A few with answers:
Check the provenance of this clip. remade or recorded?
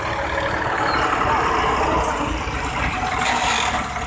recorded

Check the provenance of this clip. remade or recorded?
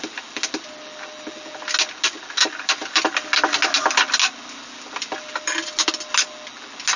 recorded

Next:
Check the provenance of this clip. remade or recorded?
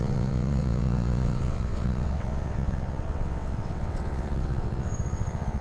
remade